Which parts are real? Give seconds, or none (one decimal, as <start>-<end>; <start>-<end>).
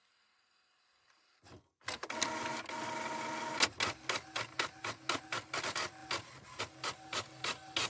0.0-7.9